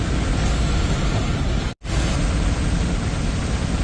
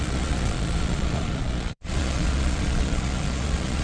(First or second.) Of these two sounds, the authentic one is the first